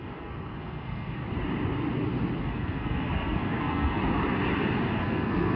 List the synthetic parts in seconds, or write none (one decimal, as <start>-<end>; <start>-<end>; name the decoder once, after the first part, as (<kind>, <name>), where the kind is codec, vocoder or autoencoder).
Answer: 0.0-1.2 (codec, SNAC); 2.4-4.0; 4.9-5.6